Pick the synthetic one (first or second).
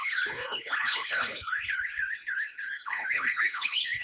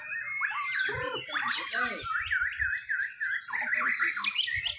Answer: first